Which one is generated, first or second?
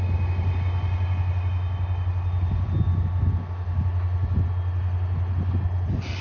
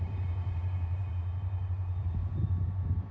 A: second